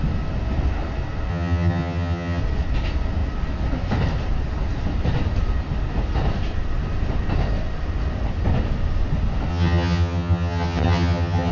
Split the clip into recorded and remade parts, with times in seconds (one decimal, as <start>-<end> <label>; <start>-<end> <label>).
0.0-1.3 recorded; 1.3-2.4 remade; 2.4-9.5 recorded; 9.5-11.5 remade